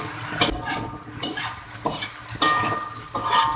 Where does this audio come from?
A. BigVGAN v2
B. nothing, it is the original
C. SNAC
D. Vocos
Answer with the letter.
B